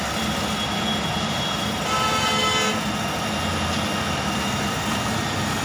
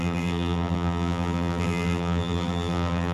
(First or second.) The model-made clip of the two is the second